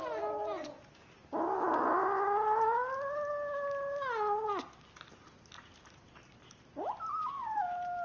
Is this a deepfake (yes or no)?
no